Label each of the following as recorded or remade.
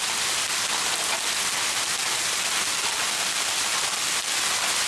recorded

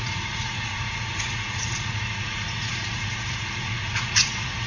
remade